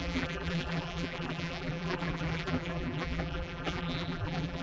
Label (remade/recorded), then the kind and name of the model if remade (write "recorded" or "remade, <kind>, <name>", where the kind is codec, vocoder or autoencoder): remade, vocoder, BigVGAN v2